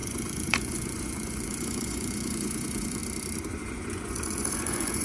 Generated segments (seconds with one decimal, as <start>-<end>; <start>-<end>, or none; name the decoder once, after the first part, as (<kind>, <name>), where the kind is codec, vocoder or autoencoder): 0.0-3.0 (vocoder, Vocos); 3.5-5.0

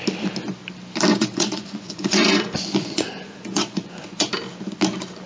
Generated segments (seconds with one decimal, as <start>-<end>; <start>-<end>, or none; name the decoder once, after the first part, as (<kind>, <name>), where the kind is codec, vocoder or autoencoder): 1.1-4.3 (vocoder, Vocos)

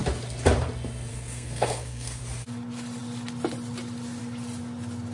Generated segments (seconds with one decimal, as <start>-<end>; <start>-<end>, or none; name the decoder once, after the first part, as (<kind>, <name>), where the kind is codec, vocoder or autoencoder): 1.1-2.2 (codec, SNAC)